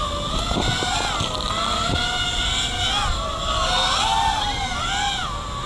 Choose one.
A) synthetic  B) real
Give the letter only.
B